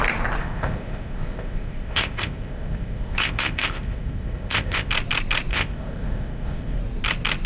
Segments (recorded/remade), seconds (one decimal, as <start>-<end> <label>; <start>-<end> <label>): 0.0-0.4 recorded; 0.4-4.9 remade; 4.9-5.5 recorded; 5.5-6.8 remade; 6.8-7.5 recorded